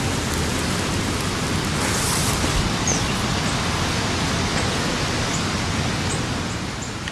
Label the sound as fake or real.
real